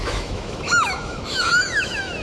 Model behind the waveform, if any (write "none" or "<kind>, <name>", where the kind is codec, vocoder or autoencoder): autoencoder, DAC-VAE